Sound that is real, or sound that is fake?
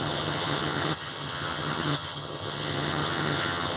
fake